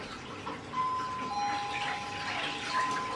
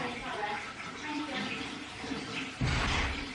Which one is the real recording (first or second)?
first